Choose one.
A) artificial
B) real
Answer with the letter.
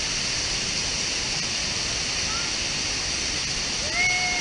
B